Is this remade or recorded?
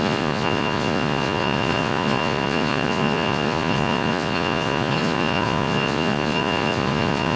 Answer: remade